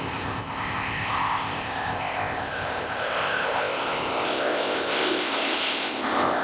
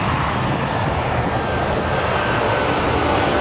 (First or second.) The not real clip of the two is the first